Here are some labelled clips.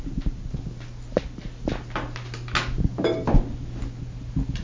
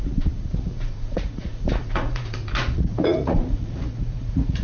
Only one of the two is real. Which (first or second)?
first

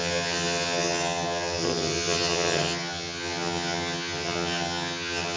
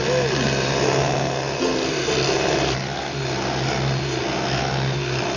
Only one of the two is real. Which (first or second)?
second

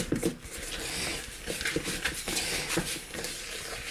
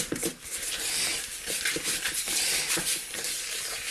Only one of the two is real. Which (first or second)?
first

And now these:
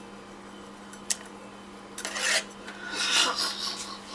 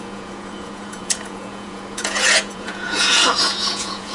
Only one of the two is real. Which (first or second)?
first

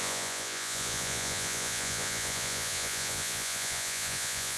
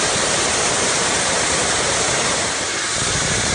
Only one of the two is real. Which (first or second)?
second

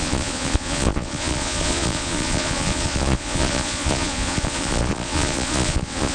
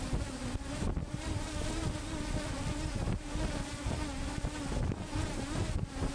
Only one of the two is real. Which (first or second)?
second